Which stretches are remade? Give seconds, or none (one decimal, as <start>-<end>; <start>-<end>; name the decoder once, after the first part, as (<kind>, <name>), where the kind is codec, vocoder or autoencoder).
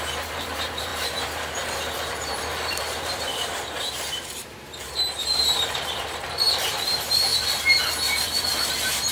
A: 0.0-9.1 (vocoder, BigVGAN v2)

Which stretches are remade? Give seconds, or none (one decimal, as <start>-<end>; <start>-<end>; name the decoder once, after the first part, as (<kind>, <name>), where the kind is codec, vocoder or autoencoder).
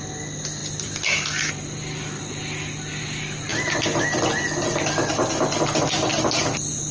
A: none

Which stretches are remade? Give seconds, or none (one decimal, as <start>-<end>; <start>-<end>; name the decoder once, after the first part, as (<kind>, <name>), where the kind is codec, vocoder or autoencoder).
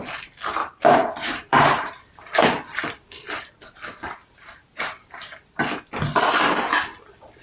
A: 0.6-2.8 (vocoder, BigVGAN v2); 4.2-5.7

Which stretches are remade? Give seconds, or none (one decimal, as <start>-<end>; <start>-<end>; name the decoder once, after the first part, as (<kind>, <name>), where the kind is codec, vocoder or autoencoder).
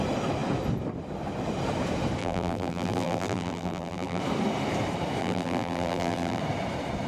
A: 2.2-4.2 (vocoder, BigVGAN v2); 5.2-6.4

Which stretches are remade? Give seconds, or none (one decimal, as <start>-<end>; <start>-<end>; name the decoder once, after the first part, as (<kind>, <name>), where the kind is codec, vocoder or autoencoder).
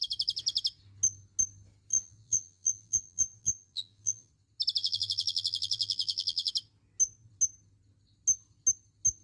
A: 1.9-4.3 (vocoder, BigVGAN v2); 4.8-6.5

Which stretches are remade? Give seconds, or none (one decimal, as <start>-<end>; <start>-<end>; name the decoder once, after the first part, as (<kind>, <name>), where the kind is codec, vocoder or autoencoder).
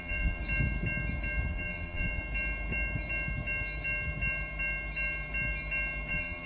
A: 0.0-0.4 (vocoder, BigVGAN v2); 1.5-2.2; 6.1-6.5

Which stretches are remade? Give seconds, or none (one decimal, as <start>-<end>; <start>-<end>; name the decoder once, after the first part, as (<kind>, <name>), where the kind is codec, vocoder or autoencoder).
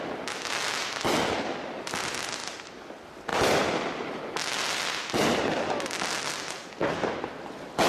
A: 2.4-2.9 (vocoder, BigVGAN v2); 3.3-5.4